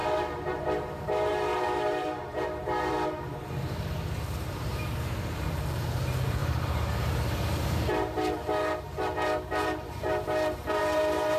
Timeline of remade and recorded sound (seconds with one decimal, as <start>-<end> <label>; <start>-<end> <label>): 0.0-11.4 remade